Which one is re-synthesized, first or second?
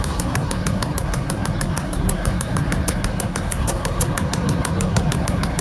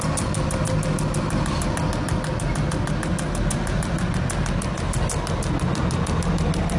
first